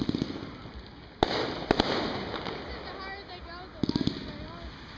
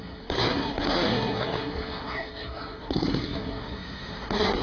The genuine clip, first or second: first